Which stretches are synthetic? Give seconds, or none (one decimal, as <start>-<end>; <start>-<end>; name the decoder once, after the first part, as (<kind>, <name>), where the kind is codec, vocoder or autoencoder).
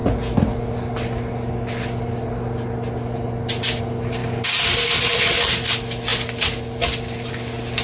none